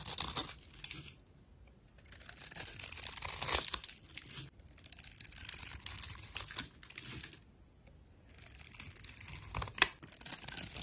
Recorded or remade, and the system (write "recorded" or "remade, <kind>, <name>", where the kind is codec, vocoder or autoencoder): recorded